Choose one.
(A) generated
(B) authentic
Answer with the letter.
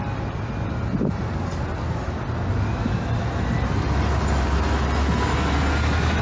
B